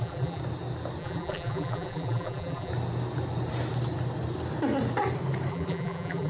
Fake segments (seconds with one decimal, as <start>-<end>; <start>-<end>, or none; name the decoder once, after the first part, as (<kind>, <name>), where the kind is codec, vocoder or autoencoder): 0.0-0.4 (vocoder, BigVGAN v2); 1.0-2.7; 5.5-6.3